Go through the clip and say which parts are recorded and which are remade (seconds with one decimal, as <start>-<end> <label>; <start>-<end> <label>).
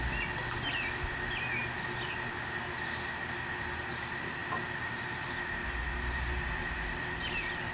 0.0-7.7 recorded